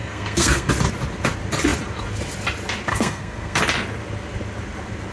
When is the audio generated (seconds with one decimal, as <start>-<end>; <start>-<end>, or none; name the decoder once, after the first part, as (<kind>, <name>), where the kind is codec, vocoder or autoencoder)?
0.0-0.7 (codec, SNAC); 2.9-3.6